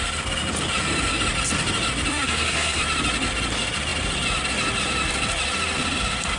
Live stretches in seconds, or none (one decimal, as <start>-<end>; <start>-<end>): 0.0-2.1; 2.8-6.4